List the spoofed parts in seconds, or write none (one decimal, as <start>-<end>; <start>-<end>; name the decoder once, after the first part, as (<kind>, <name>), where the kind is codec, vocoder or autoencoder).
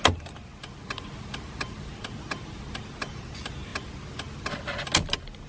none